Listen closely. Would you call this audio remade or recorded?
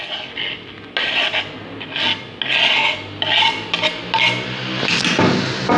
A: recorded